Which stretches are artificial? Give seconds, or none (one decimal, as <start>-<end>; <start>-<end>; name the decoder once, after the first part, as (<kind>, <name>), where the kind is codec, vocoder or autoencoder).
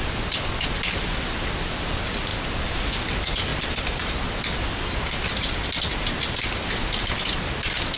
3.5-4.1 (vocoder, BigVGAN v2)